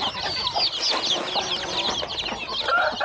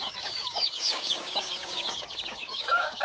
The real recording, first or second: first